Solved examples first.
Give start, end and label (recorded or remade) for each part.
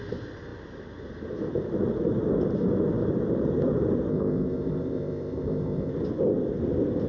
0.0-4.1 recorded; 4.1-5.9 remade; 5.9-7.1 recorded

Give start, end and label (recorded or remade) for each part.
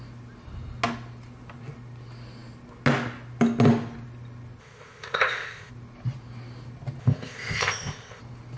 0.0-4.6 recorded; 4.6-5.7 remade; 5.7-7.0 recorded; 7.0-8.2 remade; 8.2-8.6 recorded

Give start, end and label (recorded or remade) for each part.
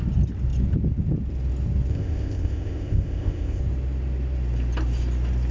0.0-1.9 recorded; 1.9-3.6 remade; 3.6-5.5 recorded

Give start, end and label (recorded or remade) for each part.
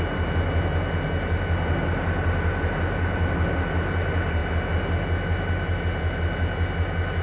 0.0-7.2 recorded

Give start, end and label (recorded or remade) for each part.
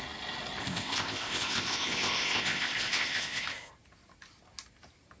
0.0-0.6 recorded; 0.6-3.7 remade; 3.7-5.2 recorded